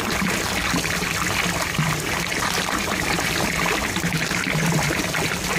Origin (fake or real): real